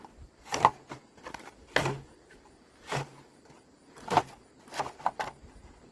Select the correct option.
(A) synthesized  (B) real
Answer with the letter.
A